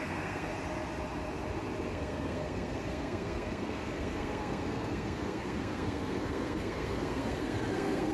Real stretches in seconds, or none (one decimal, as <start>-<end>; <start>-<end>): 0.5-1.9